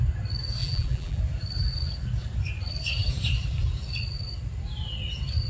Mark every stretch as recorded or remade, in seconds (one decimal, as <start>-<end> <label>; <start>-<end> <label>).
0.0-0.6 recorded; 0.6-1.2 remade; 1.2-5.5 recorded